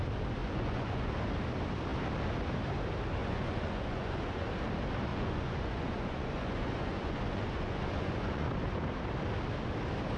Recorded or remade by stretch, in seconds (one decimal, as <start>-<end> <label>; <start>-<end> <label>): 0.0-0.4 recorded; 0.4-1.1 remade; 1.1-3.2 recorded; 3.2-4.5 remade; 4.5-5.1 recorded; 5.1-8.5 remade; 8.5-10.2 recorded